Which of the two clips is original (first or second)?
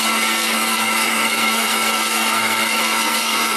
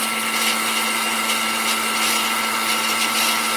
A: second